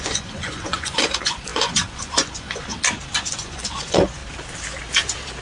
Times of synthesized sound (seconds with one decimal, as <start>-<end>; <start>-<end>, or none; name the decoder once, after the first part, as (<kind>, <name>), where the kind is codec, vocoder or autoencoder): 0.0-2.7 (vocoder, Vocos); 3.3-4.2